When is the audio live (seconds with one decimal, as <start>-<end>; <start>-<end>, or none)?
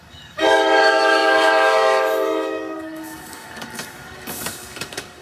none